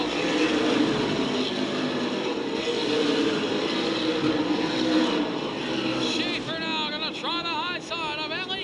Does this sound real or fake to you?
real